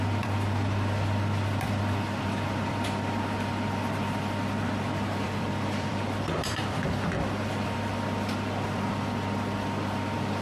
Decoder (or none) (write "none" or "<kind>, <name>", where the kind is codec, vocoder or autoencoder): vocoder, BigVGAN v2